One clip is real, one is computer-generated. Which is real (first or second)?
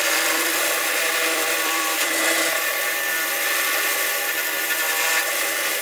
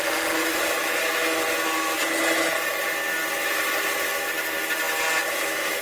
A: second